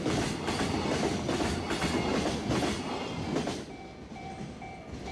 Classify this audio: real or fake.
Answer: real